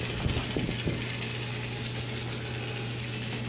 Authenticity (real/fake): real